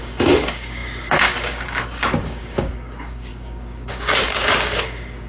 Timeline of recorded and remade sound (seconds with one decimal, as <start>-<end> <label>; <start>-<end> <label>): 0.0-5.3 remade